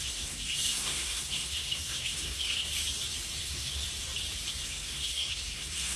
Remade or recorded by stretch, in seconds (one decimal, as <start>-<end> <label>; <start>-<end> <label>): 0.0-2.7 remade; 2.7-3.4 recorded; 3.4-3.8 remade; 3.8-4.5 recorded; 4.5-6.0 remade